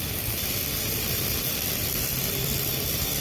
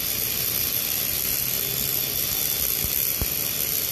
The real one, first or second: second